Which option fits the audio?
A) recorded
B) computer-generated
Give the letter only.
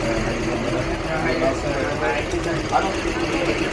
A